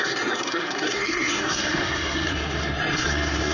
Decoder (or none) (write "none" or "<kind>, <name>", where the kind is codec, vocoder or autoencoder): codec, SNAC